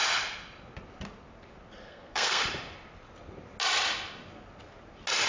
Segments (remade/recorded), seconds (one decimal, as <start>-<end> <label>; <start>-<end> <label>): 0.0-1.8 recorded; 1.8-2.4 remade; 2.4-5.3 recorded